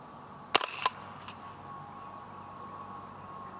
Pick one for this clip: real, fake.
real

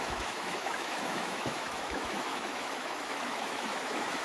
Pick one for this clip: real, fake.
fake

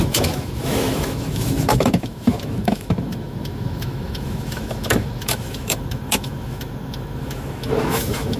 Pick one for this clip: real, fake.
fake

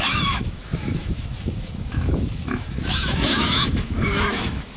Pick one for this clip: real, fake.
fake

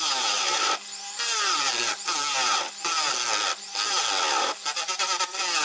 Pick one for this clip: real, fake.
real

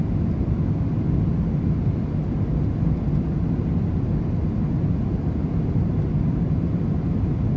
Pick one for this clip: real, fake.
real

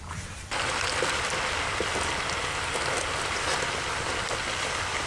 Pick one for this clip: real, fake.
real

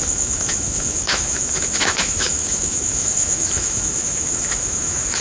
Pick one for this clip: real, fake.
fake